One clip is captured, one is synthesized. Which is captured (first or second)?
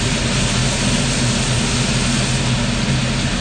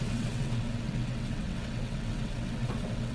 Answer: first